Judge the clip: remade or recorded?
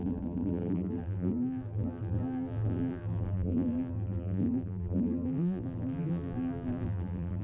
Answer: remade